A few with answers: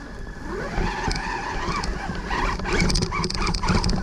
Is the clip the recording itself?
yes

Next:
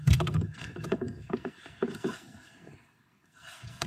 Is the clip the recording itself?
no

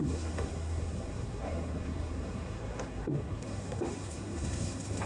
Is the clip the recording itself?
no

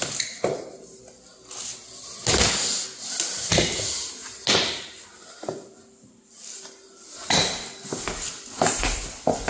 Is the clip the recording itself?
yes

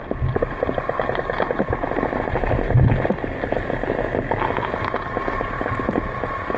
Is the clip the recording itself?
yes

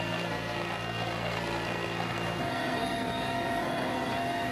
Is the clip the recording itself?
no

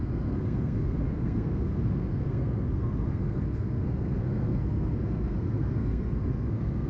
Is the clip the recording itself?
no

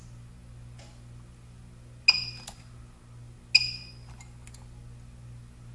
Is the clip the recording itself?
yes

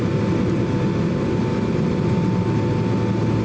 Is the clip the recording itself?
yes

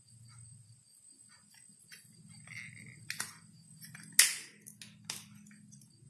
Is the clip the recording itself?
yes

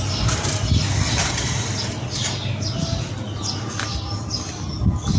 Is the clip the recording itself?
yes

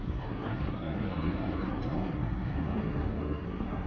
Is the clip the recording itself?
no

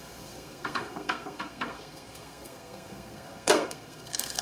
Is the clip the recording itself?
no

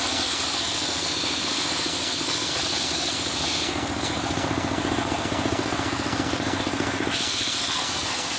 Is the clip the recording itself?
no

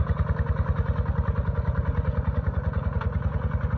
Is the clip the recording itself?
yes